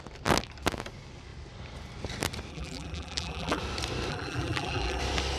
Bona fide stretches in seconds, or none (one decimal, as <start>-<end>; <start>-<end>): 0.0-2.5; 3.6-4.1; 5.0-5.4